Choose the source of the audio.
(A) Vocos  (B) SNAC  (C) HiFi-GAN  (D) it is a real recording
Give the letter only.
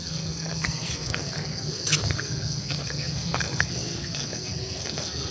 B